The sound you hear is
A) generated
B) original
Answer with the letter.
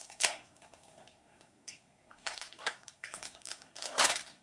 A